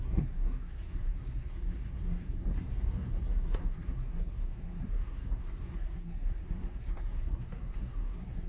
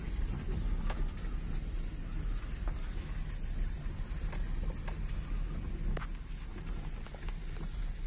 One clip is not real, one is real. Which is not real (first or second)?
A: first